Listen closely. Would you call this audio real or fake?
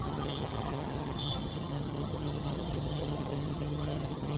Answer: fake